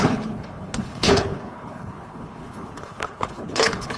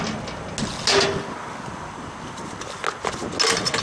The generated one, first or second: first